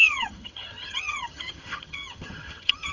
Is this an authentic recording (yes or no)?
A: no